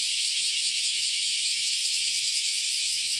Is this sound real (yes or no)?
no